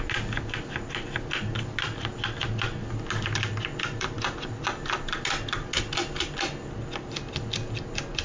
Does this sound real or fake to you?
real